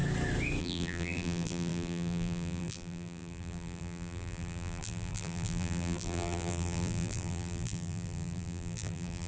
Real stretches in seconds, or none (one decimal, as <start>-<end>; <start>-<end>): 0.0-0.6